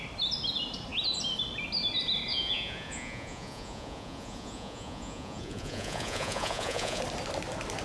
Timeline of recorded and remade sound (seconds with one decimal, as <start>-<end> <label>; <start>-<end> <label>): 0.0-2.3 recorded; 2.3-7.0 remade; 7.0-7.8 recorded